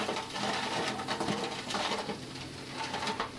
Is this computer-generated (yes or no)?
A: yes